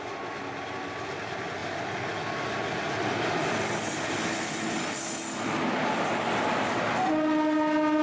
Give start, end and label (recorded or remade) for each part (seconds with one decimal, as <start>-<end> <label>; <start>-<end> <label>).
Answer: 0.0-8.0 recorded